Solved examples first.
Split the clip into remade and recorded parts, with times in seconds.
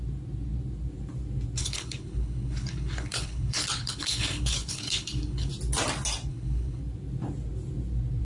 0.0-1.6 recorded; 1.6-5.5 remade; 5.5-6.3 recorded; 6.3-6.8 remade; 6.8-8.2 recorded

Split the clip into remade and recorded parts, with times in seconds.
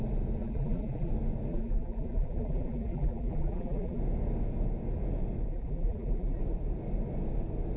0.0-0.4 recorded; 0.4-1.1 remade; 1.1-1.5 recorded; 1.5-4.0 remade; 4.0-5.5 recorded; 5.5-6.4 remade; 6.4-7.8 recorded